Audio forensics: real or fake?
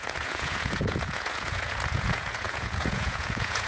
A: fake